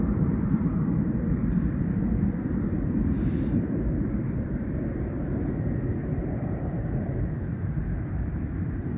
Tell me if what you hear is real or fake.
fake